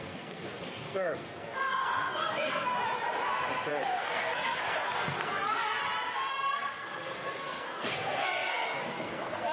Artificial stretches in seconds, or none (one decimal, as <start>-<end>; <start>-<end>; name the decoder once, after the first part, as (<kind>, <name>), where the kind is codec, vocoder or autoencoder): 0.0-2.7 (codec, SNAC); 3.7-5.8; 6.3-9.5